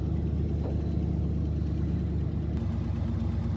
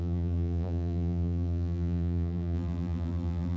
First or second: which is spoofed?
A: second